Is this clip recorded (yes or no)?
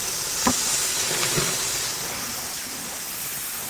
yes